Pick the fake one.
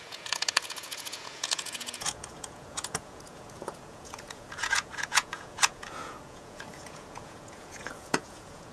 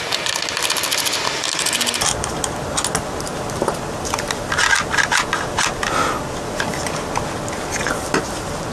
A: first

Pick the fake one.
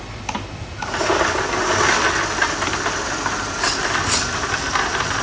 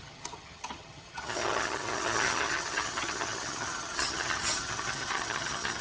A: second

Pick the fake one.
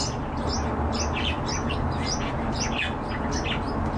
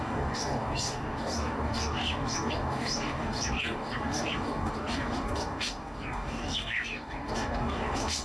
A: second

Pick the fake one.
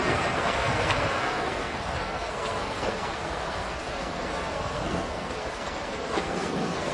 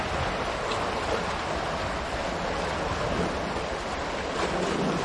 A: first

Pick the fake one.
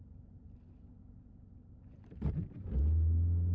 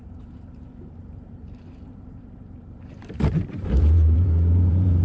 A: second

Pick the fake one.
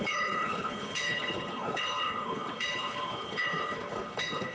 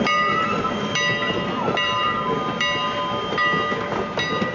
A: first